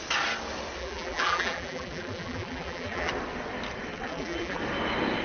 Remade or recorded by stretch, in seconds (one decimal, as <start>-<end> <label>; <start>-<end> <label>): 0.0-0.8 recorded; 0.8-3.1 remade; 3.1-3.9 recorded; 3.9-4.6 remade; 4.6-5.2 recorded